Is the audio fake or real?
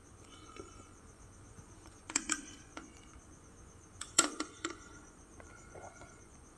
fake